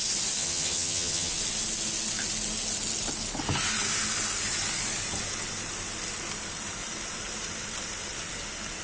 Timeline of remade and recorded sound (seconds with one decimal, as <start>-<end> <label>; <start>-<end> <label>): 0.0-0.4 recorded; 0.4-1.3 remade; 1.3-8.8 recorded